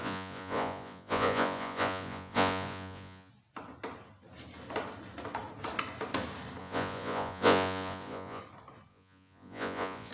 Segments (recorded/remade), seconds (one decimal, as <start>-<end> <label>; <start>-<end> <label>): 0.0-3.3 remade; 3.3-6.6 recorded; 6.6-8.4 remade; 8.4-8.9 recorded; 8.9-10.1 remade

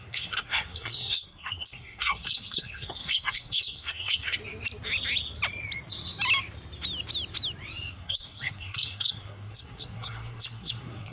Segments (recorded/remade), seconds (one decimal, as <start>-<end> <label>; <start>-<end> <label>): 0.0-4.4 remade; 4.4-7.9 recorded; 7.9-11.1 remade

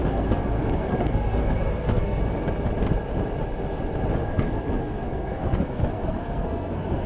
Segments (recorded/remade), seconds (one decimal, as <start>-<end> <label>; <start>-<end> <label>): 0.0-2.2 remade; 2.2-4.2 recorded; 4.2-7.1 remade

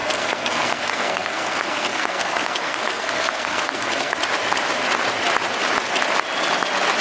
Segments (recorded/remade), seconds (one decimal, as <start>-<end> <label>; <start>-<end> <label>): 0.0-4.2 remade; 4.2-7.0 recorded

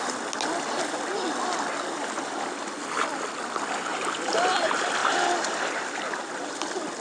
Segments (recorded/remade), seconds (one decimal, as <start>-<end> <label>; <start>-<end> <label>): 0.0-5.0 recorded; 5.0-6.2 remade; 6.2-7.0 recorded

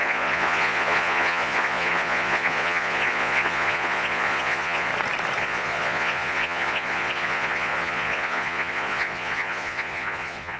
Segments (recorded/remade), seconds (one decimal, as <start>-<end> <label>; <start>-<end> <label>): 0.0-4.9 remade; 4.9-5.4 recorded; 5.4-10.6 remade